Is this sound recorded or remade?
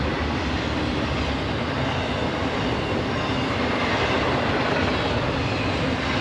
recorded